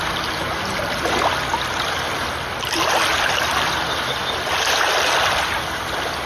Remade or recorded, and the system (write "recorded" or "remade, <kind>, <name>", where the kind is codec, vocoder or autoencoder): recorded